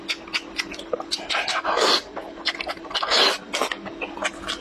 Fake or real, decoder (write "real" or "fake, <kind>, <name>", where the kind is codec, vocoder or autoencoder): real